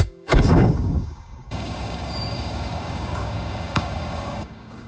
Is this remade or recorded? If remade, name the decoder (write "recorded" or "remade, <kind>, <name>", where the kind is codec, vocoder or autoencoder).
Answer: remade, codec, DAC